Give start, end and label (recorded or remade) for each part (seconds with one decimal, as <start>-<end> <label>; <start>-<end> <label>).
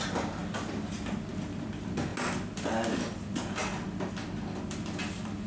0.0-5.5 recorded